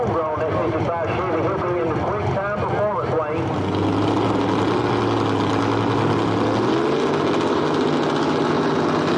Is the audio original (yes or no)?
yes